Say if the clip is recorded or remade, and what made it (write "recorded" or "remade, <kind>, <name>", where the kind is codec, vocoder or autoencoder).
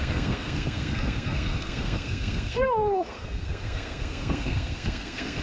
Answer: remade, codec, SNAC